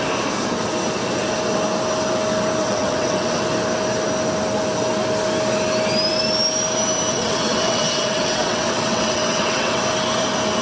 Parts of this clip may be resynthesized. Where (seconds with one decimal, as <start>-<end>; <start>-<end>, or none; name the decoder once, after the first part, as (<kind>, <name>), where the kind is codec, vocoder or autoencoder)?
2.6-3.4 (vocoder, WaveNeXt); 7.1-9.8